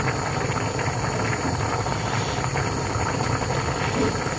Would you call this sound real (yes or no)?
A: yes